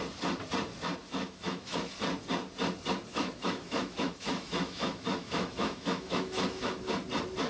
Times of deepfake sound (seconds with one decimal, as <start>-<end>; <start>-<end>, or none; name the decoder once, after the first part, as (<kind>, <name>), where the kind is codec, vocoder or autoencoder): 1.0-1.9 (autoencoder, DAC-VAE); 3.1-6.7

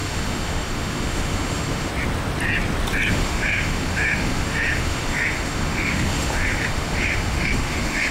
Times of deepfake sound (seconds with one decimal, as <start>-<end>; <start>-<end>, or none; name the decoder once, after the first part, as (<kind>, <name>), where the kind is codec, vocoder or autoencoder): 0.0-1.9 (autoencoder, DAC-VAE); 3.1-8.1

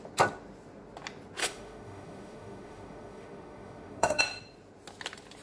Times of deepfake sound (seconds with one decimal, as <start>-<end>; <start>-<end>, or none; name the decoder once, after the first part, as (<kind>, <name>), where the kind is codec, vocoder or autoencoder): 1.4-4.2 (autoencoder, DAC-VAE)